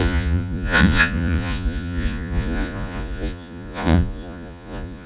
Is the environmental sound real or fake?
fake